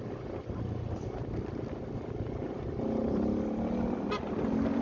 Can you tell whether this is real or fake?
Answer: real